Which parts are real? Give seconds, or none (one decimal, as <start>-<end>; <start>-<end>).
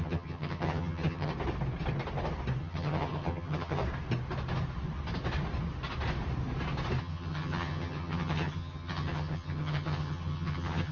1.3-2.6; 3.8-7.0